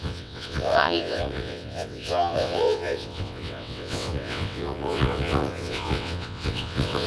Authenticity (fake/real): fake